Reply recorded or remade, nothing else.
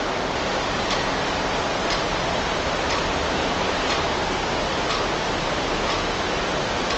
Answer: recorded